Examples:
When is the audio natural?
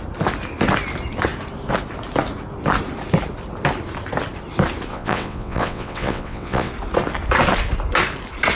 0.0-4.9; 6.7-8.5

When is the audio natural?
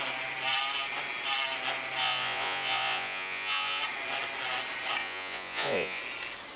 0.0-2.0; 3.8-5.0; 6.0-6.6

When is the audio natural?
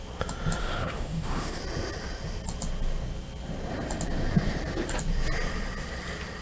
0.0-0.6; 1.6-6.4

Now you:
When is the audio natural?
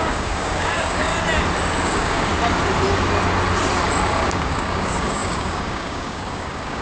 1.1-1.8; 2.3-4.1